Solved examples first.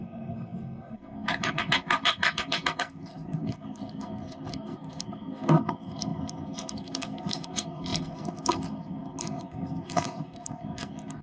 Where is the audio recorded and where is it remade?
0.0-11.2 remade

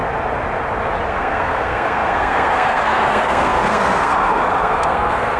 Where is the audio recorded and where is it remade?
0.0-1.1 recorded; 1.1-5.4 remade